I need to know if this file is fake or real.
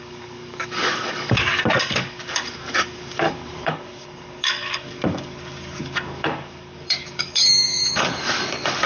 fake